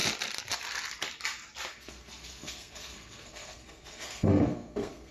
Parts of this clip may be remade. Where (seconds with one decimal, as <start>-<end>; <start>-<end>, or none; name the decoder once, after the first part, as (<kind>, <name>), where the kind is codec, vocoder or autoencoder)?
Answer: 1.7-5.1 (codec, SNAC)